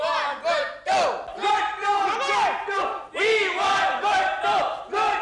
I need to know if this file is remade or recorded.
recorded